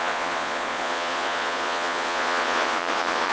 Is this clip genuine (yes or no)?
no